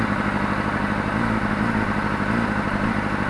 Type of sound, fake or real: real